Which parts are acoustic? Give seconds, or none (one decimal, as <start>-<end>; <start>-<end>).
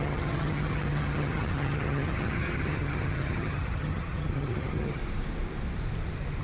5.0-6.4